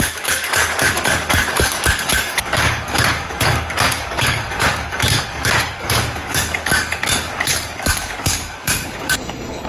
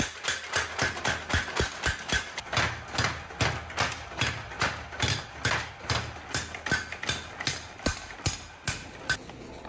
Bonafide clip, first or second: second